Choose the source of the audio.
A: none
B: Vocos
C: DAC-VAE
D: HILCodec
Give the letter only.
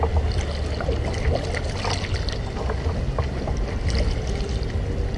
A